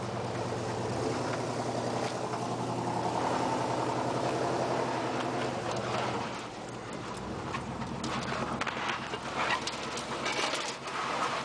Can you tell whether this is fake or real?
real